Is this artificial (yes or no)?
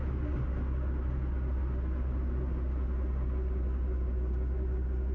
no